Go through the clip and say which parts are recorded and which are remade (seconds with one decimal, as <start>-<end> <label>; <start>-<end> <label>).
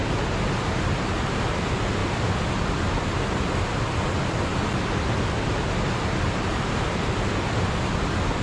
0.0-8.4 recorded